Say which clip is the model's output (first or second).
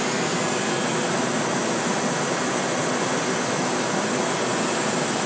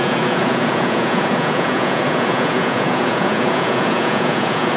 second